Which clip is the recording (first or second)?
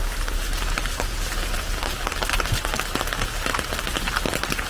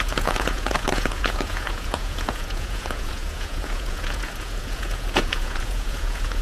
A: first